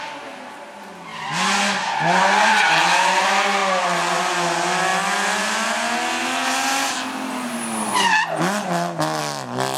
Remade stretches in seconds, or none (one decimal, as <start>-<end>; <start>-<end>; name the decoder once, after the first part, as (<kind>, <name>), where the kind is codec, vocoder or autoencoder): 1.1-2.6 (vocoder, BigVGAN v2)